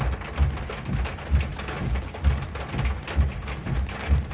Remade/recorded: recorded